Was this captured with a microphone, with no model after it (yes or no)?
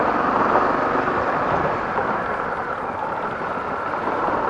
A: yes